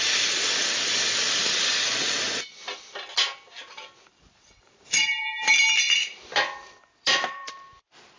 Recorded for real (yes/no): no